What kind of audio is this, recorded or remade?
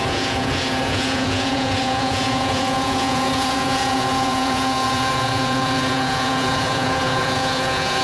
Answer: remade